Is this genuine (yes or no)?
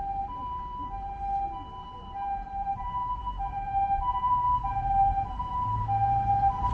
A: no